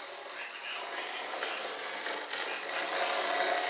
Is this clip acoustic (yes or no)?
yes